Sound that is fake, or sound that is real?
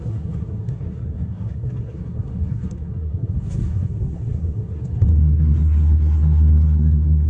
fake